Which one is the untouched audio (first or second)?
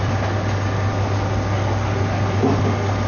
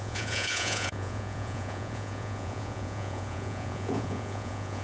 first